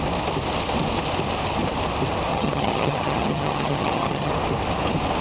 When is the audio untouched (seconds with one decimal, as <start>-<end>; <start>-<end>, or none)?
0.0-2.3; 4.3-5.2

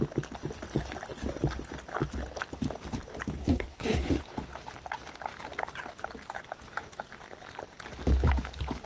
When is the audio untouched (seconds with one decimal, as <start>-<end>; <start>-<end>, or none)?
0.0-3.4; 4.2-8.9

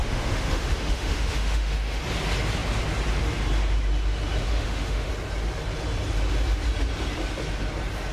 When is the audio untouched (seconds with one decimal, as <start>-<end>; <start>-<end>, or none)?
2.0-4.4; 5.1-8.1

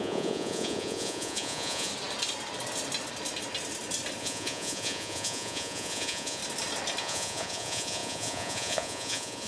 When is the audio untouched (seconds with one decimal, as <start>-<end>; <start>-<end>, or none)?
1.9-4.2; 6.4-7.0